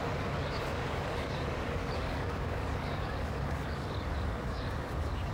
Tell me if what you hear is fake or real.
fake